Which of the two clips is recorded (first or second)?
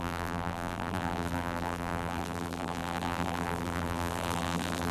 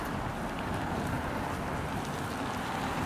second